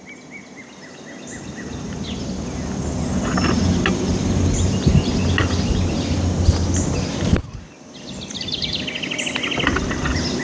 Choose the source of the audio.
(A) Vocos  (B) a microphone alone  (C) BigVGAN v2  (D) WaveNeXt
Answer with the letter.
B